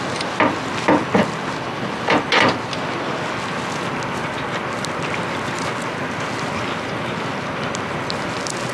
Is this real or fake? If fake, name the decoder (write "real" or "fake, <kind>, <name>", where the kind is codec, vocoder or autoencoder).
real